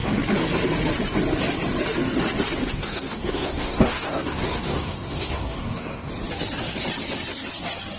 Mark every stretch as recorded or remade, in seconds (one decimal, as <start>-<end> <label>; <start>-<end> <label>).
0.0-2.6 recorded; 2.6-6.1 remade; 6.1-8.0 recorded